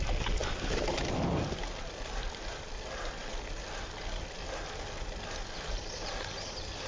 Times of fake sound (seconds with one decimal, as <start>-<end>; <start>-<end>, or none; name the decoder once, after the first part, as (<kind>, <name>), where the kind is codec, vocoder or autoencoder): none

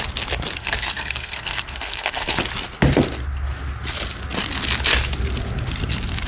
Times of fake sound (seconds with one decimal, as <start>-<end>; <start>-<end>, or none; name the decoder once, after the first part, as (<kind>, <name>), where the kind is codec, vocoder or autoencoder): 0.6-2.4 (codec, SNAC)

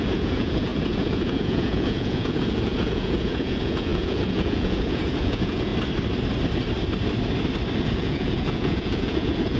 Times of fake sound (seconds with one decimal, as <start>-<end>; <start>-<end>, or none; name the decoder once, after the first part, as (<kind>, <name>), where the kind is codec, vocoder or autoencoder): 0.0-5.7 (vocoder, Vocos); 7.8-9.6